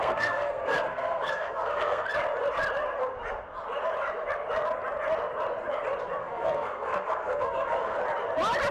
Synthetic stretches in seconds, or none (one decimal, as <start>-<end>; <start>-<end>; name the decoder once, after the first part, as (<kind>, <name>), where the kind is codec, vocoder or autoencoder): 0.0-2.1 (codec, SNAC); 6.2-8.0